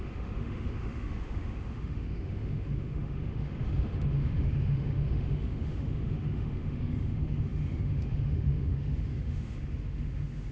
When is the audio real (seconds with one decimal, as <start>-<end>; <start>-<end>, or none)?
none